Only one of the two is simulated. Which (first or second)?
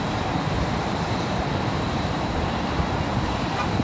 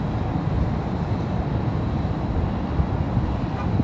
first